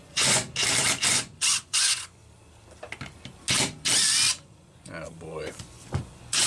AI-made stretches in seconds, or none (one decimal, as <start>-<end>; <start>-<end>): 0.0-0.4; 1.1-2.2; 4.3-6.5